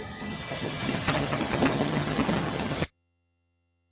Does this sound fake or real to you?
fake